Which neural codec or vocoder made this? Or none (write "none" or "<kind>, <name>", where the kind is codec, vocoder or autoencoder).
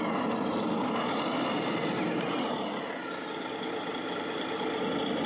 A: none